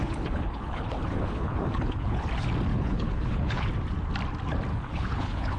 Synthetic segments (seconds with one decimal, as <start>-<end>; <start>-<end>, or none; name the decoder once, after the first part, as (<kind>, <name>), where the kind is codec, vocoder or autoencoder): 0.0-2.3 (codec, HILCodec); 2.7-3.7; 4.7-5.6